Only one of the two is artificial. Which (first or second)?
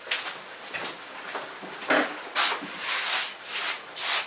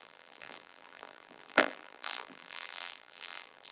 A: second